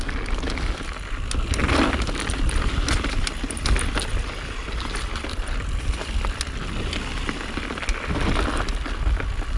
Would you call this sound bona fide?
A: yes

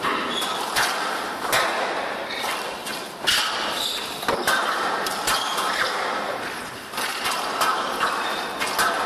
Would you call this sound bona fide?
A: yes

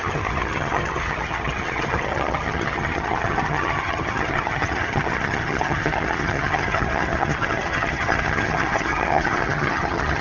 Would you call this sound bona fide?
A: no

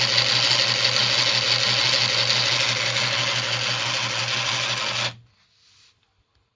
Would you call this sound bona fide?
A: yes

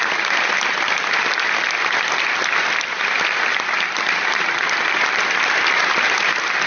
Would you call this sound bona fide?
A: yes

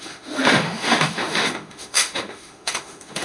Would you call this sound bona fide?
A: no